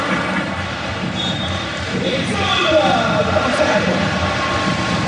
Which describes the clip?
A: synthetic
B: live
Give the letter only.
A